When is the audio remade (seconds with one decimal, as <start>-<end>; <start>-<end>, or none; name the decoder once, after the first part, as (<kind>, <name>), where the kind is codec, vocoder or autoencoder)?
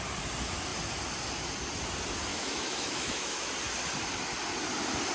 2.3-3.5 (autoencoder, DAC-VAE)